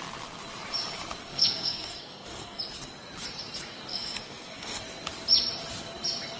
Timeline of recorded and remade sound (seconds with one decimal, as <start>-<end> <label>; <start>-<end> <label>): 0.0-1.2 recorded; 1.2-2.6 remade; 2.6-3.9 recorded; 3.9-4.8 remade; 4.8-6.4 recorded